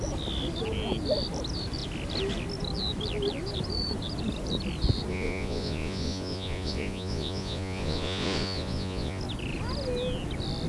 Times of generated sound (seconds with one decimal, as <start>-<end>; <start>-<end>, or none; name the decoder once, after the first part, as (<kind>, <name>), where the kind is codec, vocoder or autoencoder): 5.1-9.2 (vocoder, Vocos)